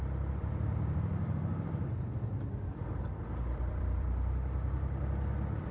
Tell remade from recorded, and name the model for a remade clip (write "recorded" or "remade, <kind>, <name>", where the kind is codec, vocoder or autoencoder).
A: remade, vocoder, BigVGAN v2